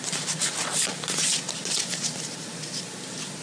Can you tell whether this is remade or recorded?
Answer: recorded